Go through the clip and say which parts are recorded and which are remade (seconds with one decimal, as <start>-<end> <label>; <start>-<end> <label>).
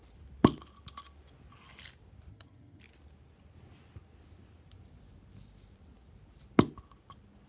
0.0-2.3 recorded; 2.3-2.8 remade; 2.8-7.5 recorded